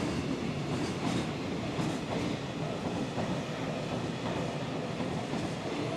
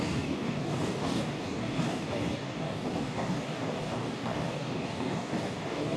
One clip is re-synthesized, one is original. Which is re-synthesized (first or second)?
second